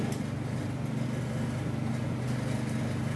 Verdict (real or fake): real